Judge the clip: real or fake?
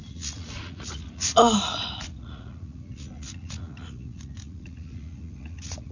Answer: fake